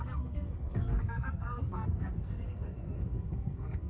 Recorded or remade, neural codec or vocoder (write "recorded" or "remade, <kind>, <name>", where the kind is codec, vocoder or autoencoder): remade, codec, SNAC